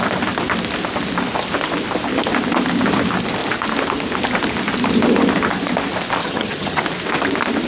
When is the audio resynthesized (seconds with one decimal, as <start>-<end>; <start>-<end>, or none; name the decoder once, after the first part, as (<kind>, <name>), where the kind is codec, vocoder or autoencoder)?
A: 6.2-6.8 (vocoder, HiFi-GAN)